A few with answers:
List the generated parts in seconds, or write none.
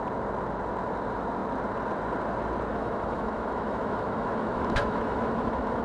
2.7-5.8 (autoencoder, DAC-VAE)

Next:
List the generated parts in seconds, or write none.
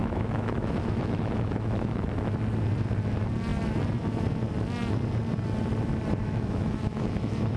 0.0-2.0 (autoencoder, DAC-VAE); 6.2-7.6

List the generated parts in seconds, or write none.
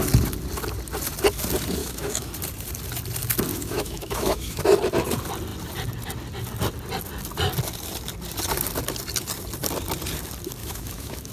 1.8-2.3 (autoencoder, DAC-VAE); 3.5-4.6; 10.6-11.3